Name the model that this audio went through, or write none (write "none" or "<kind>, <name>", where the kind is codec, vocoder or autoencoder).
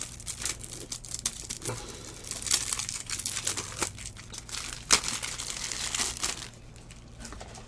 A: none